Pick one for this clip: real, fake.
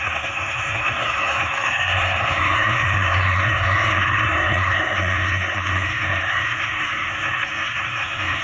fake